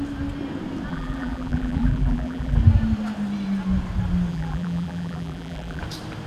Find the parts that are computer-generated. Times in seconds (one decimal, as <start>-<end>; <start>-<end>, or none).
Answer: 0.9-2.6; 4.3-5.8